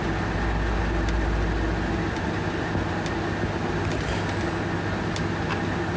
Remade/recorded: recorded